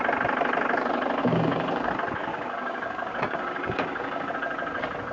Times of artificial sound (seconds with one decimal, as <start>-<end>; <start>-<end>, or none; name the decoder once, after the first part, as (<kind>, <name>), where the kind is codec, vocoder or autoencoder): 1.2-1.9 (codec, DAC); 2.3-4.3